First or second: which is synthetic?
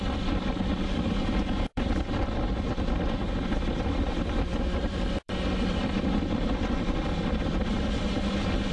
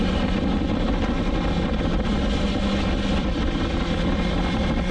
first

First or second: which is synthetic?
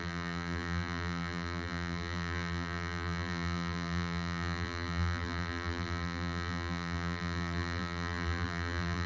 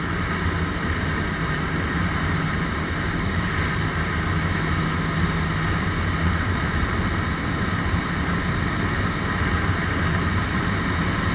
first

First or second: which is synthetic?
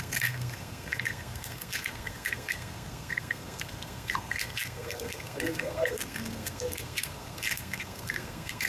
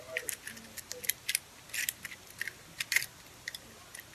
first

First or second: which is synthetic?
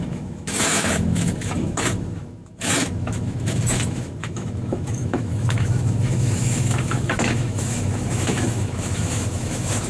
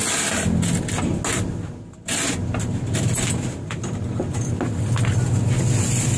first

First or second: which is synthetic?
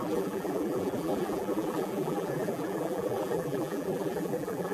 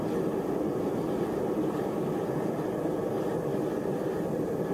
first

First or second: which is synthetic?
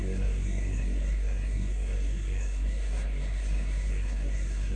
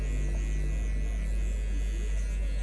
first